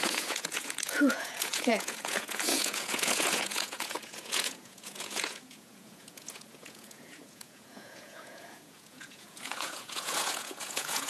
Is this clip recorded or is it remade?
remade